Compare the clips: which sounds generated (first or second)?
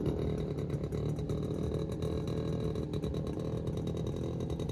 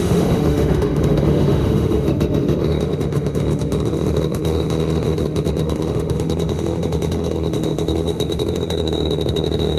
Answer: second